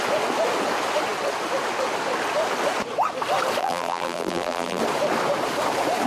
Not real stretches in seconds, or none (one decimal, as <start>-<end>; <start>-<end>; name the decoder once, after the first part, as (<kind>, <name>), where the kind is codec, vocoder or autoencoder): 3.6-4.8 (vocoder, BigVGAN v2)